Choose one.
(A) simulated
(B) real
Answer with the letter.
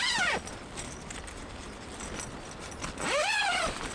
B